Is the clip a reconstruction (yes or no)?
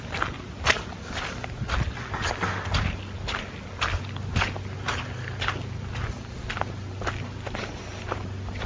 no